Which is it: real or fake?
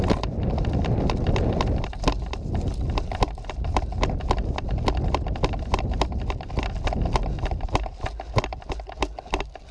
real